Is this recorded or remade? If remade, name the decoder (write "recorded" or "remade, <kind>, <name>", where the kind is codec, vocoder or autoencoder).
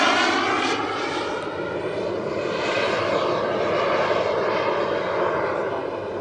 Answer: recorded